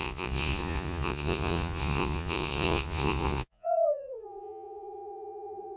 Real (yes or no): no